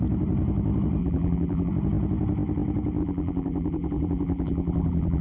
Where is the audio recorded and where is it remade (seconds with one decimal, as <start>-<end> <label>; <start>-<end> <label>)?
0.0-1.0 recorded; 1.0-1.7 remade; 1.7-3.0 recorded; 3.0-5.2 remade